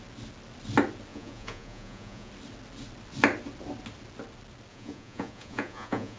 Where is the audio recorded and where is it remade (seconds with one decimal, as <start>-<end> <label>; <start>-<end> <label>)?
0.0-1.1 recorded; 1.1-2.3 remade; 2.3-4.7 recorded; 4.7-6.2 remade